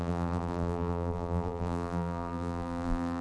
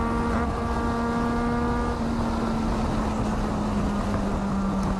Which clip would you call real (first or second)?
second